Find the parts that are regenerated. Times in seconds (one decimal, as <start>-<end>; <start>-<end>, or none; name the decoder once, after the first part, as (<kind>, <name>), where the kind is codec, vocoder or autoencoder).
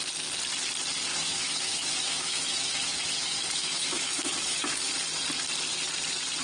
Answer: 1.1-4.9 (autoencoder, DAC-VAE)